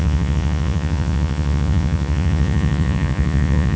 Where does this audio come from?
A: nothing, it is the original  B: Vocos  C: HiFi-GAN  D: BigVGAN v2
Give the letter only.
B